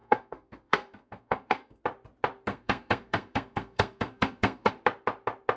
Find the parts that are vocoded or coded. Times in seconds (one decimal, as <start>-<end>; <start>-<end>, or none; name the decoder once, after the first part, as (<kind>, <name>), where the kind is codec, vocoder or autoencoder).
0.0-1.8 (codec, SNAC); 2.5-4.7